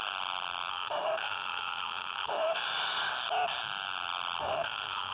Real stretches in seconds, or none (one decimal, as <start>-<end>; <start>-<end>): 0.0-0.7; 3.1-4.4